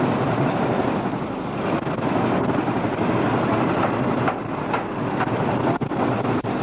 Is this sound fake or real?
real